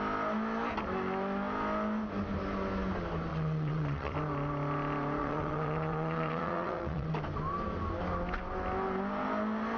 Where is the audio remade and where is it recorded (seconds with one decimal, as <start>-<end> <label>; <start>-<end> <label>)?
0.0-3.3 recorded; 3.3-4.1 remade; 4.1-5.2 recorded; 5.2-7.1 remade; 7.1-9.8 recorded